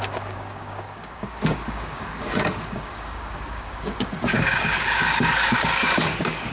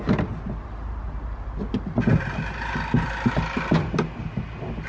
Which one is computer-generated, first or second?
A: first